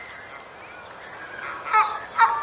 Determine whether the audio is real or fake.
real